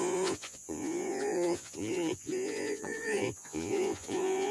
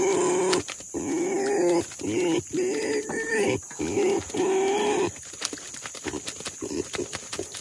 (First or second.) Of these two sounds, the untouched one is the second